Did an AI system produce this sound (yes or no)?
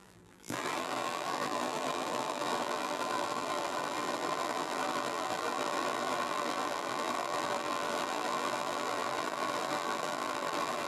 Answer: yes